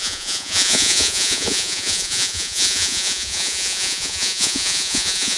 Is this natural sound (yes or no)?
no